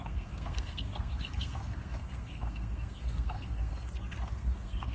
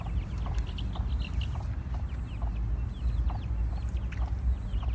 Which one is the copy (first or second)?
first